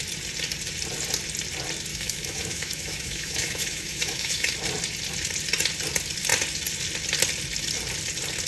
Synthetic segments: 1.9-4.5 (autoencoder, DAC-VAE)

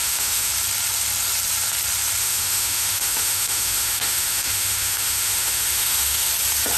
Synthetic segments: 0.0-0.5 (autoencoder, DAC-VAE); 2.2-6.3

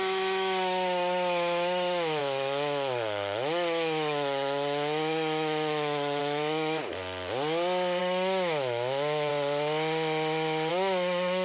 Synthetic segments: 0.0-6.8 (autoencoder, DAC-VAE); 8.0-9.3; 10.7-11.4